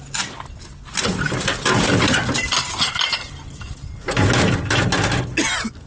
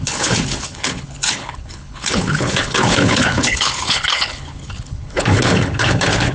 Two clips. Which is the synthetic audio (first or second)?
second